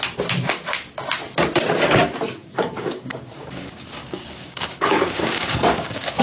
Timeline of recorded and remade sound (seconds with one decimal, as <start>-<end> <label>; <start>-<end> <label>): 0.0-2.4 recorded; 2.4-6.2 remade